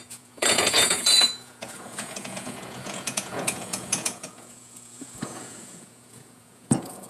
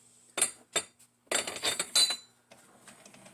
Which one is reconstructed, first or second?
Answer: first